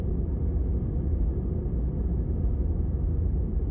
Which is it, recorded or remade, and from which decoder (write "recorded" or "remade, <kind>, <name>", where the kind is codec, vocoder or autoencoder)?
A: recorded